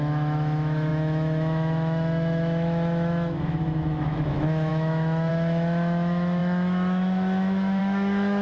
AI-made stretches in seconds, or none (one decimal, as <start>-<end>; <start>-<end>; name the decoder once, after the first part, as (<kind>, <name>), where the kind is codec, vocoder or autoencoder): 0.0-8.4 (autoencoder, DAC-VAE)